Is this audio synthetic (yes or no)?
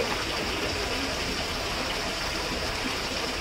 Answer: no